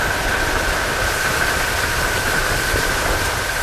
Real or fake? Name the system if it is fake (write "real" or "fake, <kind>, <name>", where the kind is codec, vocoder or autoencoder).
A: real